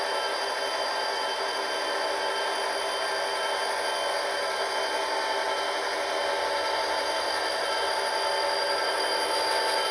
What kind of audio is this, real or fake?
real